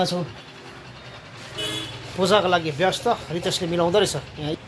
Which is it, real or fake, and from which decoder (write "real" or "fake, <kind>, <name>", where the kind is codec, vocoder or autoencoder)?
real